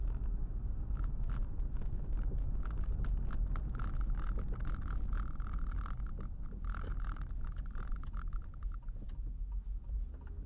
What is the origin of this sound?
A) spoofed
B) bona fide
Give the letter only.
B